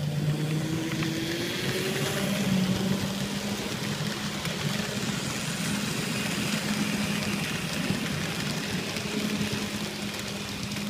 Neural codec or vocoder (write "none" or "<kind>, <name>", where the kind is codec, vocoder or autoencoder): none